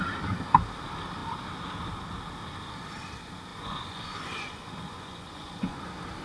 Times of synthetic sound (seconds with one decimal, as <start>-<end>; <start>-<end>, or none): 3.5-5.8